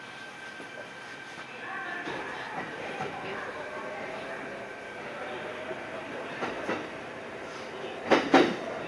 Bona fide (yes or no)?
yes